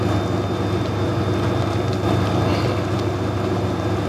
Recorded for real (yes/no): yes